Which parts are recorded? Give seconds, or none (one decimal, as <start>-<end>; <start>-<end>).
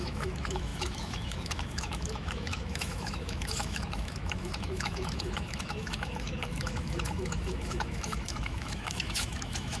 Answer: none